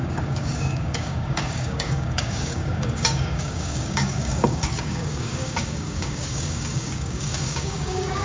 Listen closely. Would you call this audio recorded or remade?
remade